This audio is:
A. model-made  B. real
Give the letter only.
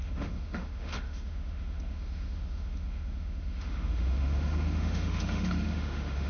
A